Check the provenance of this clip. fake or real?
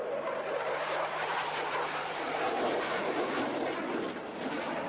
real